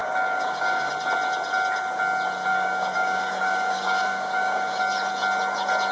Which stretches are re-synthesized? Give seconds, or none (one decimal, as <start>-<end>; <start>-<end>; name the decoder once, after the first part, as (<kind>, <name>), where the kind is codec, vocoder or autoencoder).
0.0-0.9 (codec, DAC); 2.5-4.8